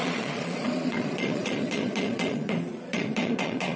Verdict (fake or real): fake